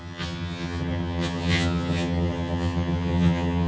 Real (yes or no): no